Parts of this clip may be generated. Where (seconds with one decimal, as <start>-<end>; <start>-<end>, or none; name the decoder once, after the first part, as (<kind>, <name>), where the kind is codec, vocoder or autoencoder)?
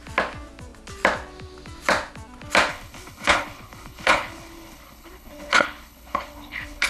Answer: 2.7-6.9 (codec, HILCodec)